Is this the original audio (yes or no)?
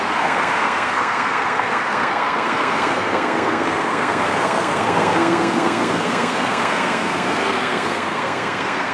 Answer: no